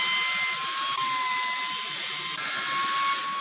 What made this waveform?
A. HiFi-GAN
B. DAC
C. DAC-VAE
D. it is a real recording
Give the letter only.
D